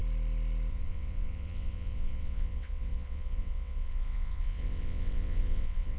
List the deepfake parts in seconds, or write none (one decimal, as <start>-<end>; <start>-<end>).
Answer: 0.7-6.0